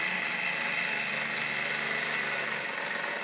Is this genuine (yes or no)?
yes